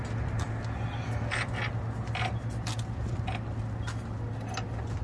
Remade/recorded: recorded